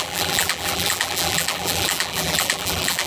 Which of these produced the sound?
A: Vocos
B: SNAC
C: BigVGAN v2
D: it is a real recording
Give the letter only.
C